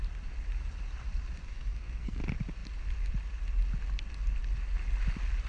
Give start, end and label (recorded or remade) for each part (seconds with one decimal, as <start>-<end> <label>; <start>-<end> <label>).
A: 0.0-1.5 recorded; 1.5-2.2 remade; 2.2-5.5 recorded